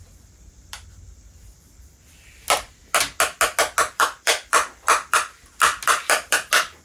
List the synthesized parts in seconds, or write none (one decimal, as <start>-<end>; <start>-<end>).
0.0-2.8; 3.9-6.8